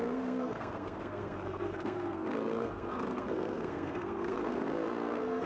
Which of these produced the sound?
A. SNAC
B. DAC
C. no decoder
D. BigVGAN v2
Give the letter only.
A